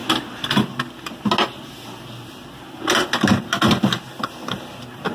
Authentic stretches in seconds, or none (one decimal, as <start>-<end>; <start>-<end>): 0.0-5.1